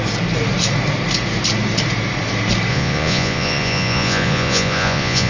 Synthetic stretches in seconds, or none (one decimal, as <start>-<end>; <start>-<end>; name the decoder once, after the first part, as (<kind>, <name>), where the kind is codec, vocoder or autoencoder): 2.7-5.3 (vocoder, Vocos)